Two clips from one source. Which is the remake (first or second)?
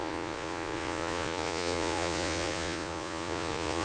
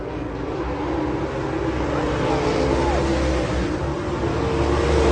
first